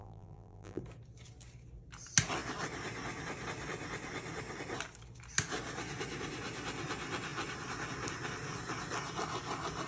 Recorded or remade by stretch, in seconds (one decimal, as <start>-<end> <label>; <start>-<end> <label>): 0.0-0.8 remade; 0.8-9.9 recorded